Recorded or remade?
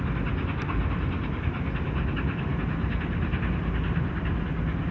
recorded